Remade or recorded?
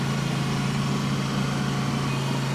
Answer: recorded